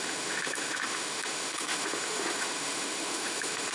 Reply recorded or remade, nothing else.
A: remade